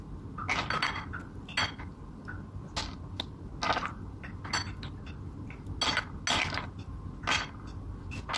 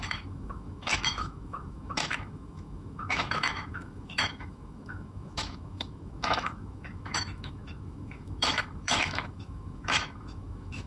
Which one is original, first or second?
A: first